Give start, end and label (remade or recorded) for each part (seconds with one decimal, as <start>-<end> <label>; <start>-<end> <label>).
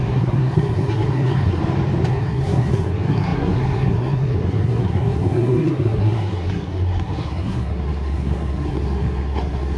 0.0-1.6 remade; 1.6-2.1 recorded; 2.1-9.8 remade